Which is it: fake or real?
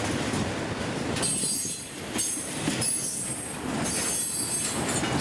real